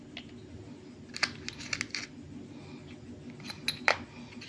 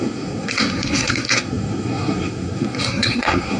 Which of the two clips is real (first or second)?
first